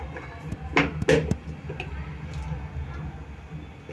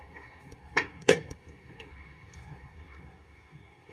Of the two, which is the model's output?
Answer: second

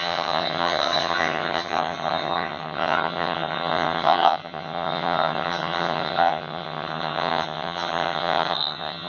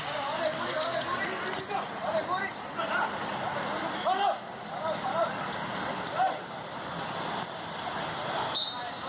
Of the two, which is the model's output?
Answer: first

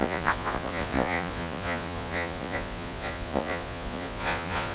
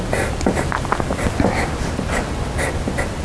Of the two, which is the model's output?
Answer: first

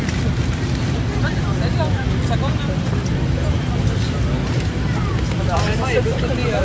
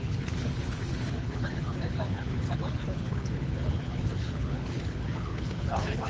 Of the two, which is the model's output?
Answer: second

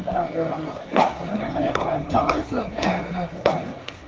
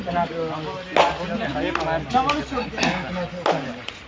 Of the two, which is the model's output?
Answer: first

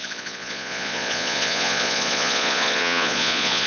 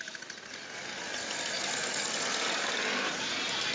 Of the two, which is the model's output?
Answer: first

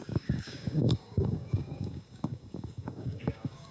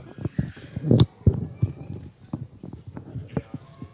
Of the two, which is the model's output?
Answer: first